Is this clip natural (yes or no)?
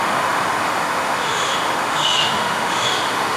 no